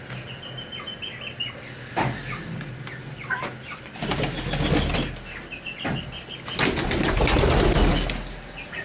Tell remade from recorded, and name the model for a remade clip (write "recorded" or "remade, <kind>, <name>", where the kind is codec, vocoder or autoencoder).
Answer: recorded